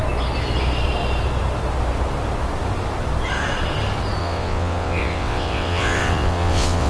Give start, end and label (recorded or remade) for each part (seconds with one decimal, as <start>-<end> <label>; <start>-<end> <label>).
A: 0.0-4.2 recorded; 4.2-6.9 remade